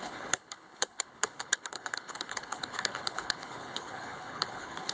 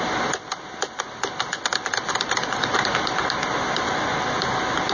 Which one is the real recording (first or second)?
second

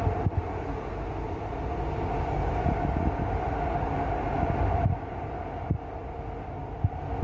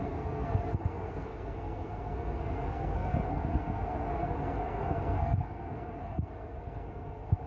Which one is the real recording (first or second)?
first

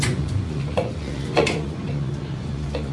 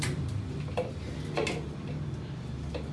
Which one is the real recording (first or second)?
second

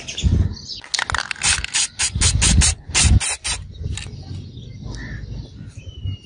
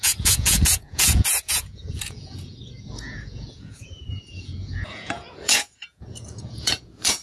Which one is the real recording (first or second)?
first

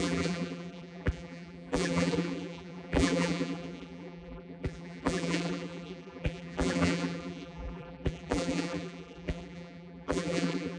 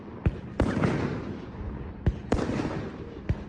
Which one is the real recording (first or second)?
second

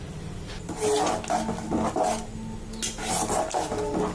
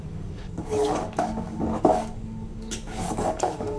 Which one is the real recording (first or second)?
first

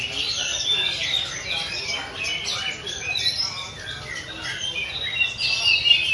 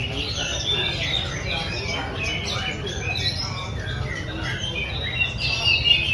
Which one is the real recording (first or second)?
second